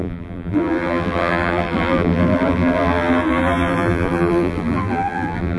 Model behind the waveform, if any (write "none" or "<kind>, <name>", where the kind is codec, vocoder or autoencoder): vocoder, BigVGAN v2